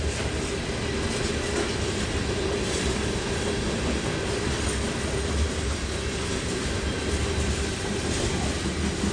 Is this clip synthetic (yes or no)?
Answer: no